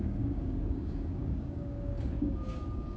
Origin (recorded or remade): remade